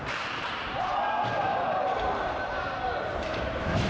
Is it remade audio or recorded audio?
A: remade